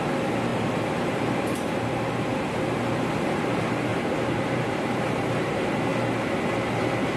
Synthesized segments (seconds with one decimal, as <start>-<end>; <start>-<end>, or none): 0.0-3.9; 4.5-5.9; 6.5-7.2